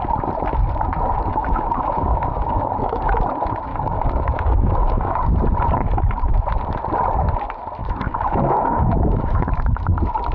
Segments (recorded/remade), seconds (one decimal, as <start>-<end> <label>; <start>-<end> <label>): 0.0-1.3 recorded; 1.3-3.1 remade; 3.1-3.7 recorded; 3.7-5.3 remade; 5.3-7.8 recorded; 7.8-9.5 remade; 9.5-10.3 recorded